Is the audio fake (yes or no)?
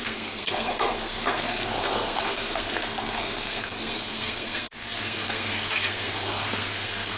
yes